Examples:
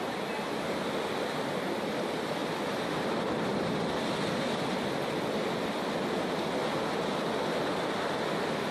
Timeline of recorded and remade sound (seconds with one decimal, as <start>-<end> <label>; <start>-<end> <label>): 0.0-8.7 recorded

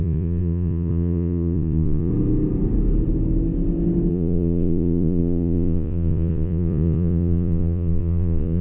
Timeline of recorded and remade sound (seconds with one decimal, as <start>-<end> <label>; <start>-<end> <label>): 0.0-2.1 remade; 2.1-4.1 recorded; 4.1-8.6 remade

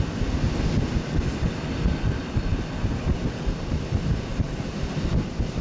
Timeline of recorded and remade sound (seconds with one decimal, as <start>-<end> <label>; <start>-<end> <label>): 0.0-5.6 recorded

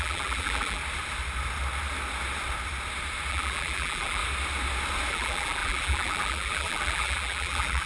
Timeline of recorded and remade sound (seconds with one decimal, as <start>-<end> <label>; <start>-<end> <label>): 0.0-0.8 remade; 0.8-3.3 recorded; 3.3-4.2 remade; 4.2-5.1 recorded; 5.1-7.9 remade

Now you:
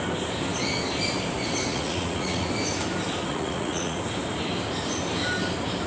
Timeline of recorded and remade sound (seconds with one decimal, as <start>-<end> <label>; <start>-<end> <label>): 0.0-1.7 recorded; 1.7-2.5 remade; 2.5-3.3 recorded; 3.3-4.0 remade; 4.0-5.9 recorded

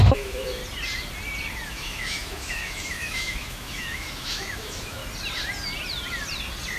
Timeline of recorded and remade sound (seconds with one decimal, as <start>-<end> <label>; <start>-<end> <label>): 0.0-0.6 remade; 0.6-1.7 recorded; 1.7-5.0 remade; 5.0-6.8 recorded